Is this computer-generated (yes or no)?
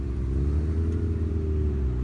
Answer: no